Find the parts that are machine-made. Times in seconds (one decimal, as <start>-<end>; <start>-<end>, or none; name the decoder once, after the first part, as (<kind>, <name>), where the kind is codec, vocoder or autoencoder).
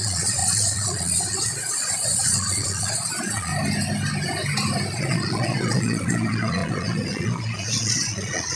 0.0-3.5 (vocoder, Vocos); 5.0-8.6